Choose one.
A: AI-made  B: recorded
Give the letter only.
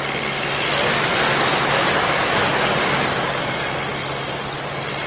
B